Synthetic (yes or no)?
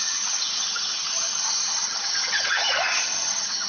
yes